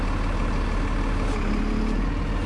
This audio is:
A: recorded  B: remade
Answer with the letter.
A